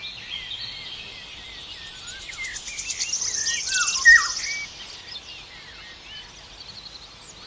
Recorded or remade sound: recorded